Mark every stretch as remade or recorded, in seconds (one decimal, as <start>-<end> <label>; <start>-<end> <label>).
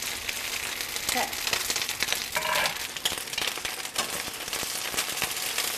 0.0-5.8 recorded